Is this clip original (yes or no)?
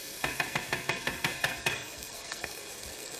no